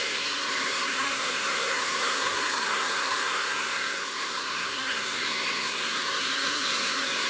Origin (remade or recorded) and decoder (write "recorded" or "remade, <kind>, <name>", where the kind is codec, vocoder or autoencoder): remade, codec, SNAC